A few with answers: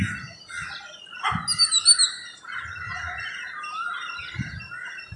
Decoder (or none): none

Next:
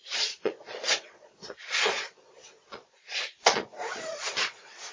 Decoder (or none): vocoder, Vocos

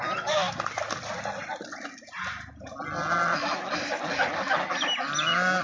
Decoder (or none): none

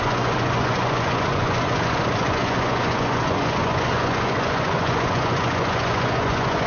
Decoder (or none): vocoder, Vocos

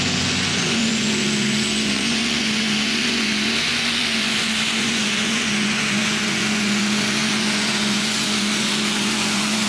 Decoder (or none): vocoder, Vocos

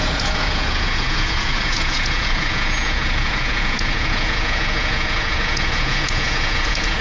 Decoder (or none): vocoder, Vocos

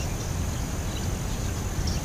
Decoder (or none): none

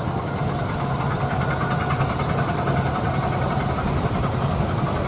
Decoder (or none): none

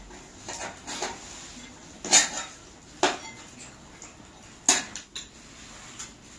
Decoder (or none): none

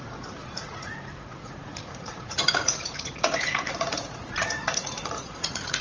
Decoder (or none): vocoder, Vocos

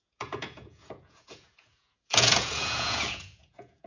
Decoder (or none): vocoder, Vocos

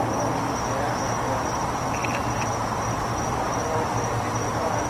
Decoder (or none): none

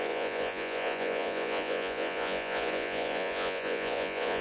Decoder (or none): vocoder, Vocos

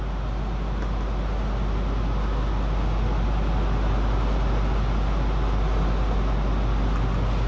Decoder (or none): none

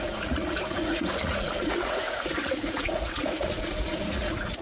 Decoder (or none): vocoder, Vocos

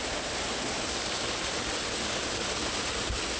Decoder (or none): none